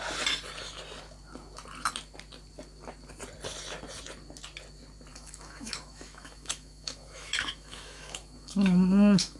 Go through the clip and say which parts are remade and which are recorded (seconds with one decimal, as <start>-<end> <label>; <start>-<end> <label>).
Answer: 0.0-5.1 recorded; 5.1-9.4 remade